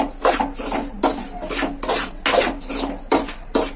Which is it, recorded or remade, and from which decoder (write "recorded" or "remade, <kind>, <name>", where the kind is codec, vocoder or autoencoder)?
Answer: recorded